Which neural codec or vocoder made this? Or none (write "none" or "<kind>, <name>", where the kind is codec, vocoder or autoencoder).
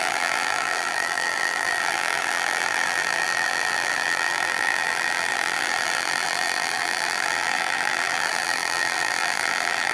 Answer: vocoder, BigVGAN v2